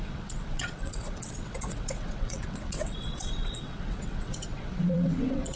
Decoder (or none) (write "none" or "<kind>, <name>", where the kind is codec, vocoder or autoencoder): vocoder, WaveNeXt